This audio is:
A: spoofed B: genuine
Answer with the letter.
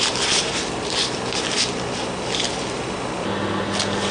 B